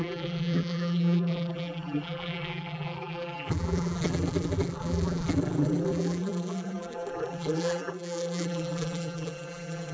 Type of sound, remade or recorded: remade